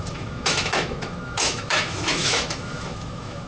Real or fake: fake